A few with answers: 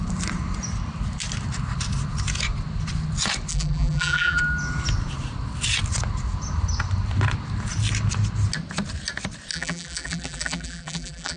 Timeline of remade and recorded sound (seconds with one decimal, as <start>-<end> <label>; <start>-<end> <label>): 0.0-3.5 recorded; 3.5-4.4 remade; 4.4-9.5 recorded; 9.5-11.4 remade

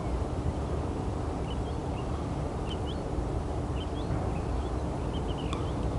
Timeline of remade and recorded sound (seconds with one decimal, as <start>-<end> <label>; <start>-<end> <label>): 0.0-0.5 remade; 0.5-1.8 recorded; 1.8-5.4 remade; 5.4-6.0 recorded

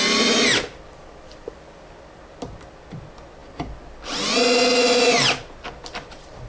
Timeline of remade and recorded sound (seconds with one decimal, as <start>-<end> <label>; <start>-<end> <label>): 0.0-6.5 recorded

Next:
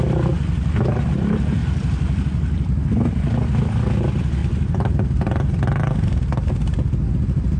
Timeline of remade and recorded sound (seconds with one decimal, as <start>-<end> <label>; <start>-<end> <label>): 0.0-4.4 recorded; 4.4-6.5 remade; 6.5-7.6 recorded

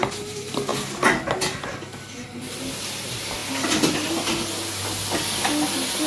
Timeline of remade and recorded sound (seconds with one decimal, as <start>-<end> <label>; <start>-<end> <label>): 0.0-6.1 recorded

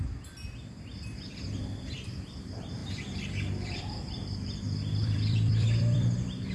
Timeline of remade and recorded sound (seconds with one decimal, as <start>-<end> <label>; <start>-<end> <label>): 0.0-6.5 remade

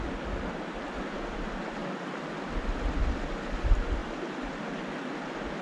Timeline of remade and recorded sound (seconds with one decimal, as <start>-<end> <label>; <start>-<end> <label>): 0.0-5.6 recorded